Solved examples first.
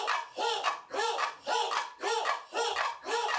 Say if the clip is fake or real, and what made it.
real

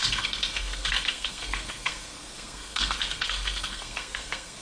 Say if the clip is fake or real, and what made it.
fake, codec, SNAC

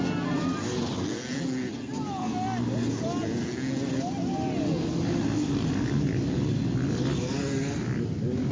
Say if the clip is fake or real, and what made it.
real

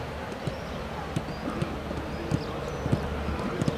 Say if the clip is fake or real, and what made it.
real